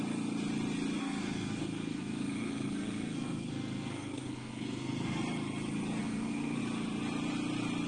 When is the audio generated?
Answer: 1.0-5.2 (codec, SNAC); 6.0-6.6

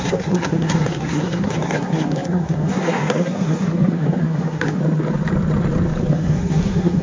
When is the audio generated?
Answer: 0.0-4.8 (codec, SNAC); 6.1-7.0

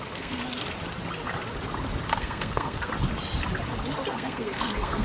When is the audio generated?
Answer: 0.0-0.4 (codec, SNAC); 2.2-2.9; 4.1-5.0

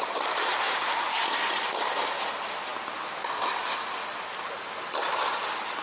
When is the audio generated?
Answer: none

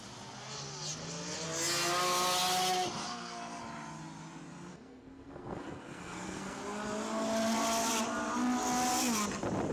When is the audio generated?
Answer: 3.0-3.6 (codec, SNAC); 4.7-6.6

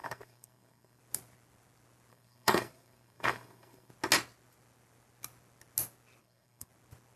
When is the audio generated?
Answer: 0.0-1.0 (codec, SNAC); 2.1-3.9; 6.2-6.7

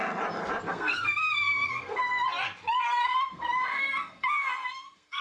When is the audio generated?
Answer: 0.7-2.0 (codec, SNAC); 3.0-5.2

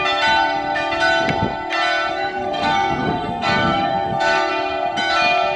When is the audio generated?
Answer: 2.1-4.5 (codec, SNAC)